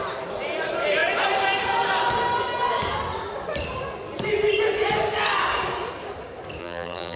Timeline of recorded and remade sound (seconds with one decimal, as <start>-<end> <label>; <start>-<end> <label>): 0.0-6.6 recorded; 6.6-7.2 remade